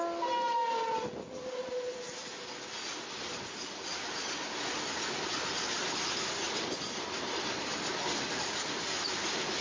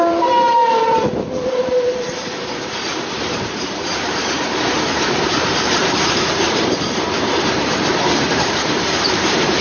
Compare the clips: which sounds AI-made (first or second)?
second